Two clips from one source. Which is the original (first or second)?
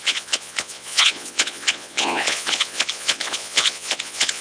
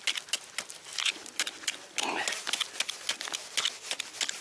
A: second